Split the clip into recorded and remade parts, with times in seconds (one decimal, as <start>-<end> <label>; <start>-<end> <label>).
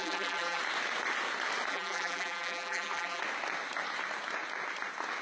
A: 0.0-0.6 remade; 0.6-1.7 recorded; 1.7-3.2 remade; 3.2-5.2 recorded